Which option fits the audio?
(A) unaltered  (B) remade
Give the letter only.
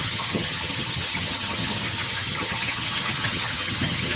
B